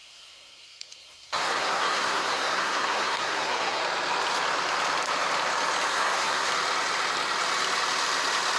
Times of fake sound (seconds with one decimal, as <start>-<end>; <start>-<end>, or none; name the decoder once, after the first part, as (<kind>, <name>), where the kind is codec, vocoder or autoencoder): 0.0-3.8 (codec, SNAC); 5.9-6.5

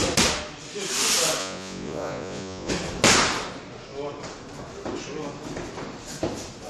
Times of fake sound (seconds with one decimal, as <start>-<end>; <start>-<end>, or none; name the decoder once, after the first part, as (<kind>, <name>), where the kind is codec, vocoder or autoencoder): 1.4-2.7 (vocoder, Vocos)

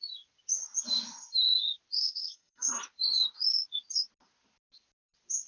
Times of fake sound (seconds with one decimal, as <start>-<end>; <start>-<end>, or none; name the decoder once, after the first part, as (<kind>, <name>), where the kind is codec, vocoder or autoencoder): 2.0-2.8 (codec, SNAC)

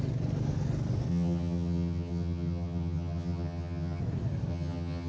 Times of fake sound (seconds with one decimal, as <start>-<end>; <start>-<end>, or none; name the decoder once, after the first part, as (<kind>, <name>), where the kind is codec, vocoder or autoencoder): 1.1-4.0 (vocoder, HiFi-GAN); 4.5-5.1

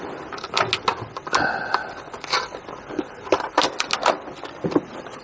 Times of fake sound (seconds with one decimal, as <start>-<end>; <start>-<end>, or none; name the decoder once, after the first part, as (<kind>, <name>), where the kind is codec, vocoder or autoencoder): none

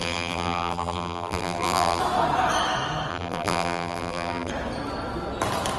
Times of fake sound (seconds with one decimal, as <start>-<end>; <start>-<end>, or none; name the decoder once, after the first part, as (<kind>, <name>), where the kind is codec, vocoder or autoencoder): 0.0-2.0 (vocoder, BigVGAN v2); 3.1-4.5

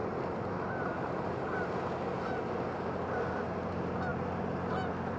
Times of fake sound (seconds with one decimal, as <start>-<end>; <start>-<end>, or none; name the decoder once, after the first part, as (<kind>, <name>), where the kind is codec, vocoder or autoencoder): none

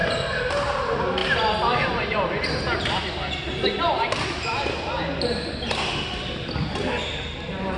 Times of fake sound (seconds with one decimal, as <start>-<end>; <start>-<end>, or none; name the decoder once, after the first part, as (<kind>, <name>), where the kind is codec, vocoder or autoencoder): none